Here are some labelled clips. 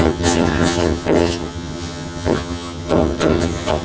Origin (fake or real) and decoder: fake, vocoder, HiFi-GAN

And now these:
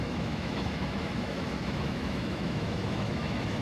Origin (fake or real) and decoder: fake, autoencoder, DAC-VAE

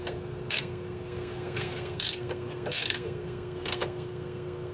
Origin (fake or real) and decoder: fake, codec, SNAC